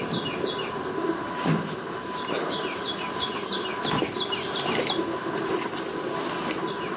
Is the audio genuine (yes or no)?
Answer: yes